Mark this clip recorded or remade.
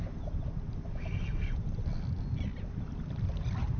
recorded